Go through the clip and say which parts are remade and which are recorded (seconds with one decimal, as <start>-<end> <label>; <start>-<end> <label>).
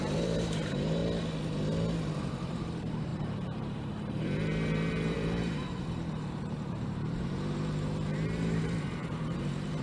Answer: 0.0-1.0 remade; 1.0-2.5 recorded; 2.5-9.8 remade